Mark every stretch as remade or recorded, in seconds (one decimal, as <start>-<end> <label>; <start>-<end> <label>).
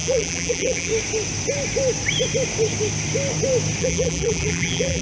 0.0-0.9 remade; 0.9-3.8 recorded; 3.8-5.0 remade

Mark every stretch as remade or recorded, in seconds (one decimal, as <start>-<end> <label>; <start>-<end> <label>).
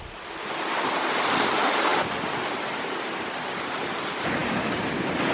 0.0-5.3 recorded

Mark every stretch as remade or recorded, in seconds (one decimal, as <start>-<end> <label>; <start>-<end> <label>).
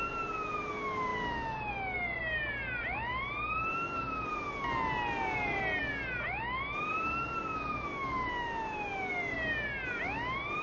0.0-10.6 recorded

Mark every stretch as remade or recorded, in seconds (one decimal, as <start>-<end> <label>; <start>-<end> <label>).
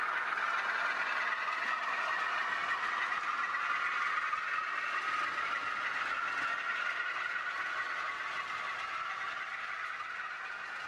0.0-9.5 recorded; 9.5-10.5 remade; 10.5-10.9 recorded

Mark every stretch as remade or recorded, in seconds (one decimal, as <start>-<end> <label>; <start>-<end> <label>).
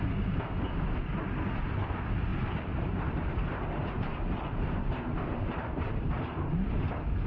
0.0-2.3 recorded; 2.3-6.7 remade; 6.7-7.3 recorded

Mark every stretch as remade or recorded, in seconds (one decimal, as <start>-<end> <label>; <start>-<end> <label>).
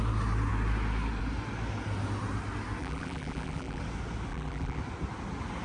0.0-2.8 recorded; 2.8-3.8 remade; 3.8-4.3 recorded; 4.3-4.8 remade; 4.8-5.6 recorded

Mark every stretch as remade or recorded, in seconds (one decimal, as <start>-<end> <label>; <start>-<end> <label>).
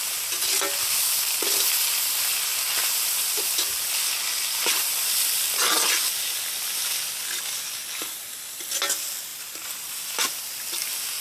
0.0-11.2 recorded